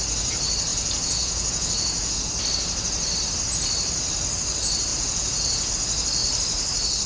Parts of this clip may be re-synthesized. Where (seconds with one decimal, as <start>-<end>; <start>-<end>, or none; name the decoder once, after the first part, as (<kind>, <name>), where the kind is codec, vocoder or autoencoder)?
0.7-2.3 (vocoder, Vocos); 4.9-5.7